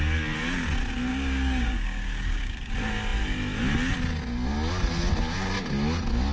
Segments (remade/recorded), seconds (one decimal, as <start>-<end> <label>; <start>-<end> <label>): 0.0-1.1 recorded; 1.1-2.7 remade; 2.7-6.3 recorded